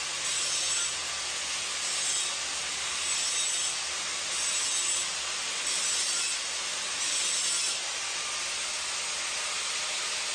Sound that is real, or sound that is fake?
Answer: real